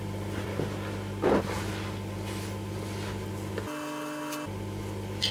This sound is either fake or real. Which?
real